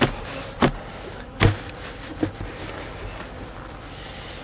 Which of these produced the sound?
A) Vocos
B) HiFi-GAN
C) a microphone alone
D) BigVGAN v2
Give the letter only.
C